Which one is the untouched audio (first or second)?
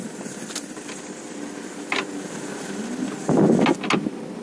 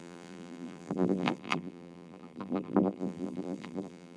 first